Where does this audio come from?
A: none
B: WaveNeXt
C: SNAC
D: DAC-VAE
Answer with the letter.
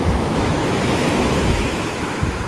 D